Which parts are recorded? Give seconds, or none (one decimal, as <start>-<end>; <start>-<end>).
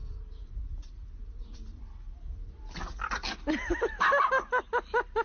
0.0-5.2